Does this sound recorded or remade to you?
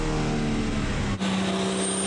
recorded